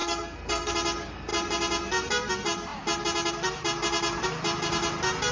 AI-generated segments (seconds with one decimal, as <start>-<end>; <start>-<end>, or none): 0.0-0.7